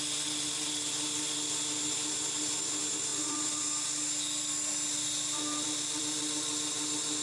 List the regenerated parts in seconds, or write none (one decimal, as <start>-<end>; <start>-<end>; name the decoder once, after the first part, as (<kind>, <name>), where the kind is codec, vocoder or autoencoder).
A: none